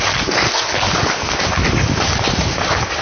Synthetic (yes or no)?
no